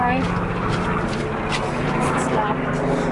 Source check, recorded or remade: recorded